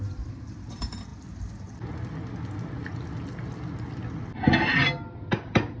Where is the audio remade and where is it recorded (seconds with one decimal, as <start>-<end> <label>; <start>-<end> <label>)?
0.0-5.8 recorded